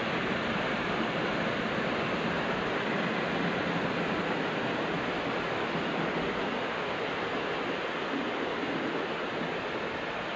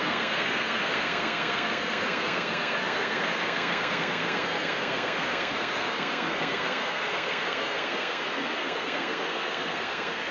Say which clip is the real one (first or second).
first